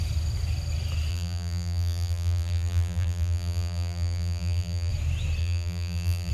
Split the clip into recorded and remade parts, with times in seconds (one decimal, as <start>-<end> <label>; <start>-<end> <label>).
0.0-1.1 recorded; 1.1-4.9 remade; 4.9-5.4 recorded; 5.4-6.3 remade